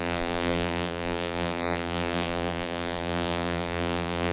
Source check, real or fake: fake